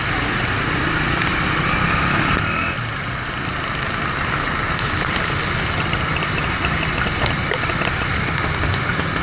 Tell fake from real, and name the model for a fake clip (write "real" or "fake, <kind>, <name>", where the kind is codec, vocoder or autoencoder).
real